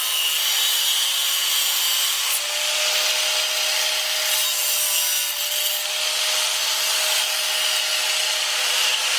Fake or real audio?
real